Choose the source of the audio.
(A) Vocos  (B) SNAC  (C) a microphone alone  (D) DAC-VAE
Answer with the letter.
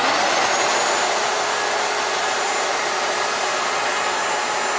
C